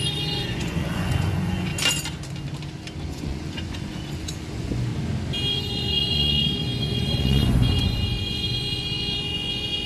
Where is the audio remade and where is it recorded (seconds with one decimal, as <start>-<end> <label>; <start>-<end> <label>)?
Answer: 0.0-1.7 remade; 1.7-3.1 recorded; 3.1-4.9 remade; 4.9-5.5 recorded; 5.5-9.9 remade